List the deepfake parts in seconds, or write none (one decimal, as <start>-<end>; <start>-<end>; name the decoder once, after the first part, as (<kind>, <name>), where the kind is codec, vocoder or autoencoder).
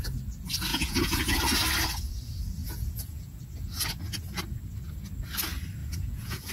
0.7-1.4 (vocoder, Vocos); 2.6-3.4; 5.8-6.5